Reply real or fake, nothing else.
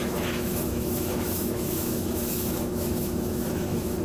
fake